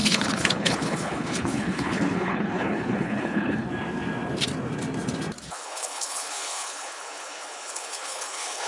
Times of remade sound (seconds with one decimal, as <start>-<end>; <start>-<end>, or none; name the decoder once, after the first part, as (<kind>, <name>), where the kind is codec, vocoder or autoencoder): 0.0-3.7 (codec, HILCodec); 5.5-8.7